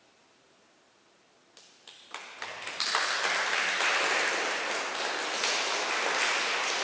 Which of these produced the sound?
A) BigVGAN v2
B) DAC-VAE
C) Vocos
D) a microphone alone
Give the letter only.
D